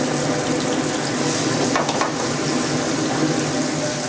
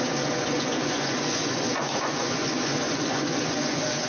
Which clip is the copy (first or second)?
second